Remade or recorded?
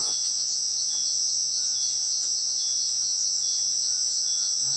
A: remade